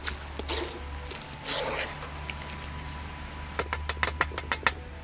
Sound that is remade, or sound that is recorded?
recorded